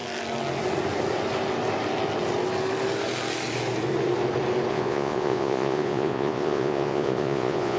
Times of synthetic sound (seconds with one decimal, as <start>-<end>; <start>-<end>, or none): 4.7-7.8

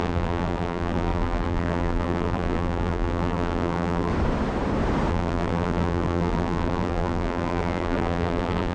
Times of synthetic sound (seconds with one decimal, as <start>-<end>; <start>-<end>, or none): 0.0-4.1; 5.1-8.7

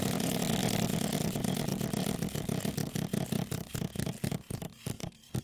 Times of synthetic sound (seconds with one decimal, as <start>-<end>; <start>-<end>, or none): none